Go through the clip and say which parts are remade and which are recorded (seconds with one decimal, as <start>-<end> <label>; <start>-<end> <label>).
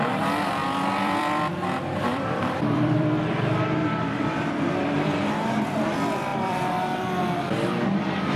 0.0-0.6 recorded; 0.6-1.4 remade; 1.4-2.1 recorded; 2.1-5.5 remade; 5.5-6.3 recorded; 6.3-7.0 remade; 7.0-8.4 recorded